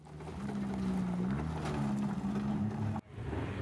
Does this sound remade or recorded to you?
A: recorded